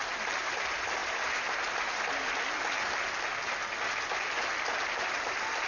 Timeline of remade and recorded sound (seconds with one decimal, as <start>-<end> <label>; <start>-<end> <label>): 0.0-5.7 recorded

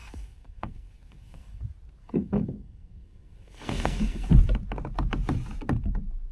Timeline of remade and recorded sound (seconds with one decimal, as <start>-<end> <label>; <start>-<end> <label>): 0.0-1.6 remade; 1.6-2.0 recorded; 2.0-4.3 remade; 4.3-6.3 recorded

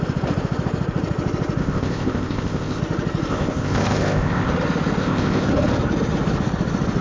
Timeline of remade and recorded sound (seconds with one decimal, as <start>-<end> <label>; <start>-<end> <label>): 0.0-1.6 recorded; 1.6-2.8 remade; 2.8-3.3 recorded; 3.3-4.5 remade; 4.5-5.0 recorded; 5.0-5.5 remade; 5.5-7.0 recorded

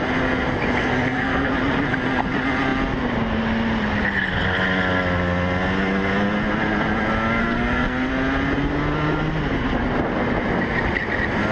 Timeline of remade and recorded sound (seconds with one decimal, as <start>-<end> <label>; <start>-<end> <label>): 0.0-0.8 recorded; 0.8-1.5 remade; 1.5-7.4 recorded; 7.4-8.1 remade; 8.1-11.5 recorded

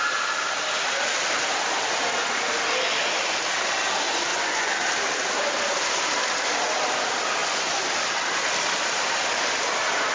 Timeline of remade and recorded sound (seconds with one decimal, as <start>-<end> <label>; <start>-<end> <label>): 0.0-4.3 recorded; 4.3-4.8 remade; 4.8-7.4 recorded; 7.4-7.9 remade; 7.9-10.1 recorded

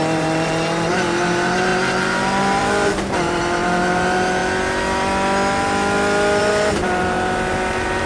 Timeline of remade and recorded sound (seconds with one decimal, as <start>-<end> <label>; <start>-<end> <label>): 0.0-4.4 remade; 4.4-6.4 recorded; 6.4-8.1 remade

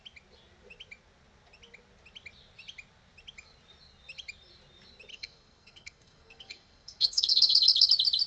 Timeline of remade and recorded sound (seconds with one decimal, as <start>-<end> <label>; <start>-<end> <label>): 0.0-5.1 recorded; 5.1-7.9 remade; 7.9-8.3 recorded